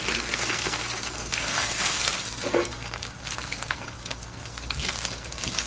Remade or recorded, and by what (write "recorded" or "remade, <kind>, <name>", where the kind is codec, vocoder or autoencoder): remade, codec, SNAC